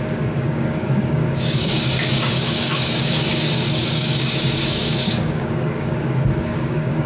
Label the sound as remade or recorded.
remade